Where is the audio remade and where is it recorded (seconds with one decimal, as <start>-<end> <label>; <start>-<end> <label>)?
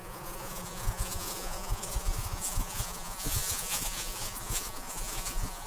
0.0-5.7 remade